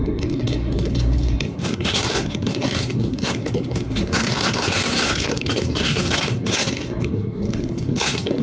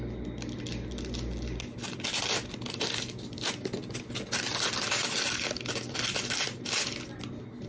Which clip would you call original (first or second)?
second